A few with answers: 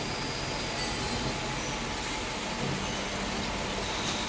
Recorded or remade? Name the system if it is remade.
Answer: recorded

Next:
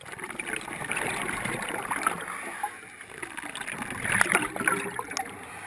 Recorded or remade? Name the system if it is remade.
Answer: recorded